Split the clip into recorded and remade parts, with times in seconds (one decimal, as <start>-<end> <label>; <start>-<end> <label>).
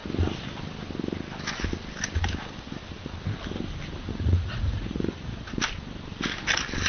0.0-4.1 recorded; 4.1-5.6 remade; 5.6-6.9 recorded